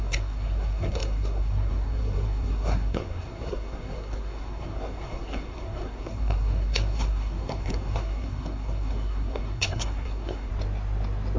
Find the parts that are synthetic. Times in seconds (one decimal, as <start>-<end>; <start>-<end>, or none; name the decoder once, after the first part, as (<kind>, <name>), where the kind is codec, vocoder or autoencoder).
0.0-10.5 (codec, SNAC)